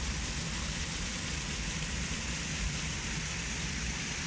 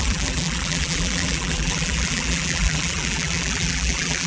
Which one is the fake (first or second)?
second